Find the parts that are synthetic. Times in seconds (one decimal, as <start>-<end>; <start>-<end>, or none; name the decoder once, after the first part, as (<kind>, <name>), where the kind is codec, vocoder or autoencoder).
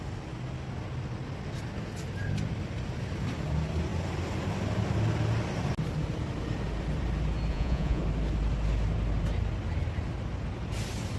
7.5-8.0 (vocoder, Vocos)